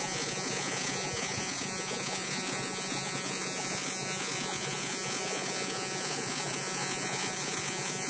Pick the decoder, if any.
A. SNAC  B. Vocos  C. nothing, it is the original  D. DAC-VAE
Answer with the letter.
B